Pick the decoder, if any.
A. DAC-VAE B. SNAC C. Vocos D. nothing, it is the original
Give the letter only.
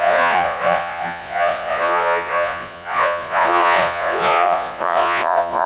C